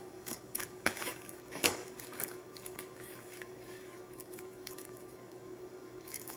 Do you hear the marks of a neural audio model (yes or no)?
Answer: yes